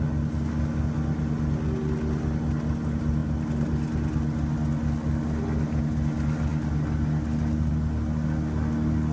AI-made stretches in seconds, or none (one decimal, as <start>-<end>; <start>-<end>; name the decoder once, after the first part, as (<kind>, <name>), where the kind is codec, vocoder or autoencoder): none

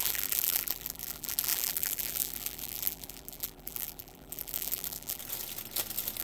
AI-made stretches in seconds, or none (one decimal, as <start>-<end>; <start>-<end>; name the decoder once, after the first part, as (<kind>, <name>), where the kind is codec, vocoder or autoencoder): 0.0-5.2 (vocoder, BigVGAN v2)

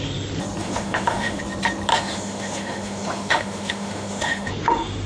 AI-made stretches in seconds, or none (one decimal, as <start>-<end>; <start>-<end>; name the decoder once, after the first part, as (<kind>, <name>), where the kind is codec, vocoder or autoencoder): 0.6-1.4 (autoencoder, DAC-VAE); 1.9-5.1

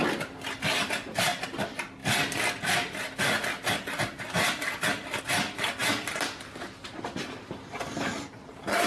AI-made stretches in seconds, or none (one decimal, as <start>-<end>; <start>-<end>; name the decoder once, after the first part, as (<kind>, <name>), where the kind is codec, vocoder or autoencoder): none

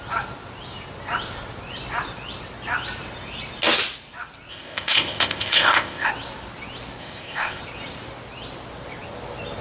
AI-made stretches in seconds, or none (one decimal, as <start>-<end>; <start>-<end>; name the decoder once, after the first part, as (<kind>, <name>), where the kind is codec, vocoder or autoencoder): 4.5-6.1 (codec, ZipCodec); 7.0-7.6